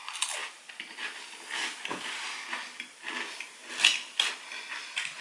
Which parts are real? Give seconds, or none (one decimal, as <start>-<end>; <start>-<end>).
0.0-5.2

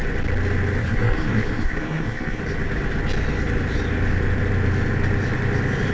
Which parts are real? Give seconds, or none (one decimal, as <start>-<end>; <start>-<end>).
0.0-0.8; 2.4-5.9

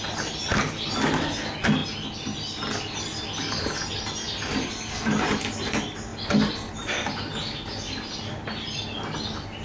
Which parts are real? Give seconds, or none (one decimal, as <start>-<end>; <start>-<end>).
0.0-9.6

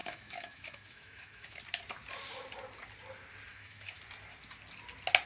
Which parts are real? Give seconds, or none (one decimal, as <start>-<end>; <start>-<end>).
1.6-3.5; 4.0-5.3

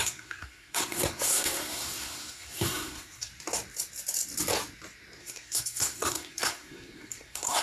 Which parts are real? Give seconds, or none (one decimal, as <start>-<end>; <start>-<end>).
3.3-5.2

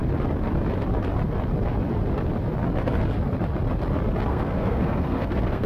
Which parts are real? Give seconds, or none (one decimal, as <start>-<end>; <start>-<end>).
0.0-4.3